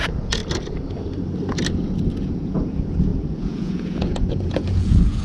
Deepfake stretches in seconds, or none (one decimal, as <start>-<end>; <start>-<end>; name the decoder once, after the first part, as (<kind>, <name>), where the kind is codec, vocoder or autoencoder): 0.0-0.4 (vocoder, Vocos); 2.2-5.2